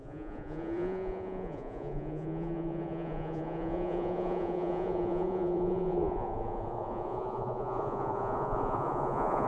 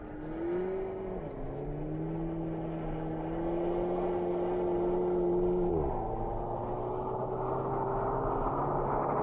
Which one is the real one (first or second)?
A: second